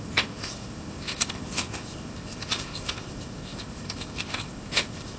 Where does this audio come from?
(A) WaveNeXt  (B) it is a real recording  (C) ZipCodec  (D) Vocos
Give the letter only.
C